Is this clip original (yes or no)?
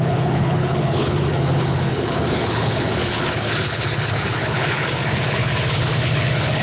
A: no